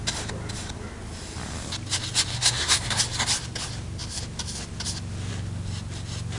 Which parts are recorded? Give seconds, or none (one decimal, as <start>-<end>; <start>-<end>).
0.0-2.3; 3.0-6.4